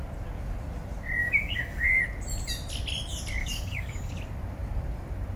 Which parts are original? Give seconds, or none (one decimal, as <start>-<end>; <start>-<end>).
0.0-1.2; 2.0-3.4; 4.1-5.4